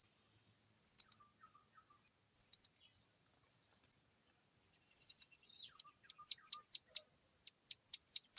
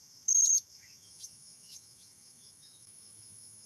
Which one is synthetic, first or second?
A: second